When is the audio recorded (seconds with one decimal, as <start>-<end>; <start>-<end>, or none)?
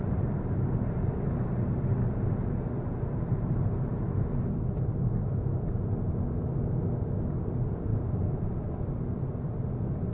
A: 0.0-7.9; 8.9-10.1